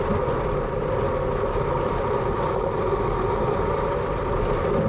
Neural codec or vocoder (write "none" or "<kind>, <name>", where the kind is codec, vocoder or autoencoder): none